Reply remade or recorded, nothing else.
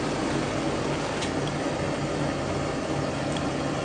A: recorded